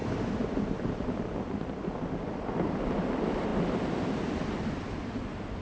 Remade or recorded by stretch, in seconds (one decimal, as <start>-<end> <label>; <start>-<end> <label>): 0.0-5.6 recorded